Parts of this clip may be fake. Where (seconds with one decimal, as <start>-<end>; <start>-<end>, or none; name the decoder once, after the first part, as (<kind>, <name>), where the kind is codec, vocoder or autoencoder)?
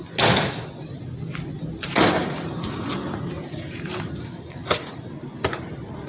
2.2-5.1 (vocoder, BigVGAN v2)